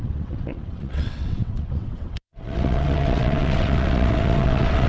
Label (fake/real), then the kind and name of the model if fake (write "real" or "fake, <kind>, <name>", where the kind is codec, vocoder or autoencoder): fake, vocoder, WaveNeXt